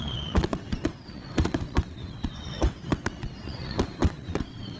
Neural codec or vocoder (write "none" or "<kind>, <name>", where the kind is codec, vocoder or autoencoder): vocoder, WaveNeXt